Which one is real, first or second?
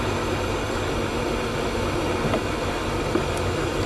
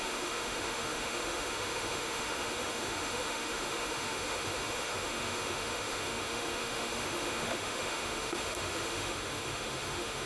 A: first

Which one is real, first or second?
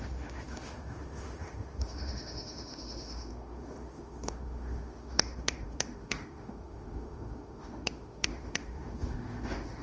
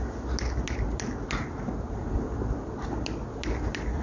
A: second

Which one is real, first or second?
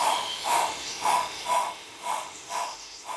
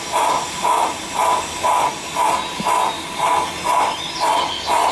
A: second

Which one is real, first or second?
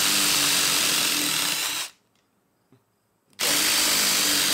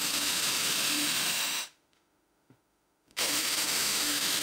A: first